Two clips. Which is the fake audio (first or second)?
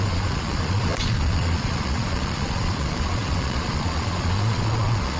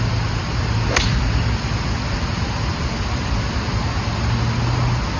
first